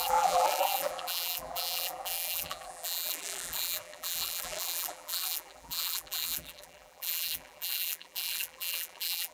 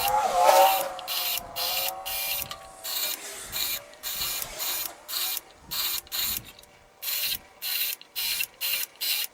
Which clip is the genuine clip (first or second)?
second